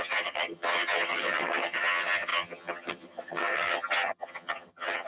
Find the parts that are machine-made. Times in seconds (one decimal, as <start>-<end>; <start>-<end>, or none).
0.0-5.1